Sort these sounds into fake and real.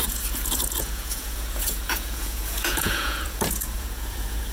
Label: fake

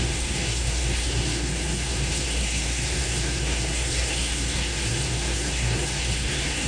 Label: fake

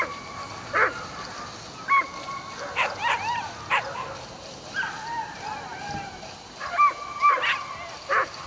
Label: real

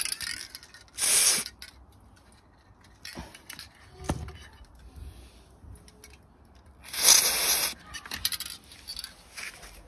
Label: real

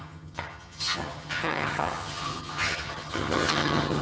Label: fake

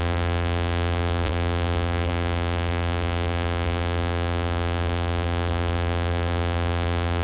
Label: fake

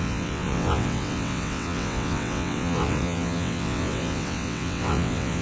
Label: fake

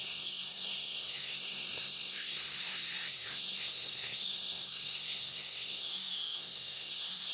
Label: fake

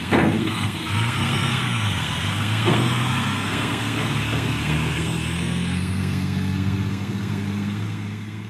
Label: fake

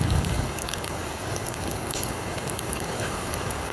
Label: fake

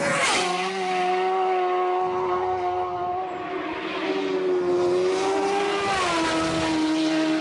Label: real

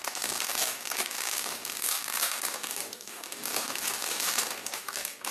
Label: fake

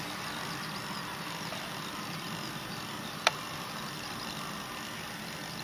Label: real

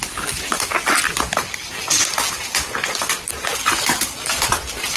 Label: real